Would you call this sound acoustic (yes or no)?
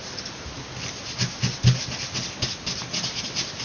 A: yes